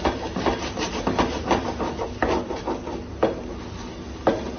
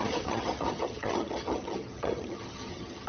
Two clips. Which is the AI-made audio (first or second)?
second